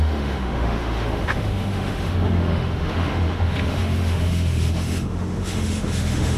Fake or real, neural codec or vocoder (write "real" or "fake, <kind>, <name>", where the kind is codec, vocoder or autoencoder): fake, autoencoder, DAC-VAE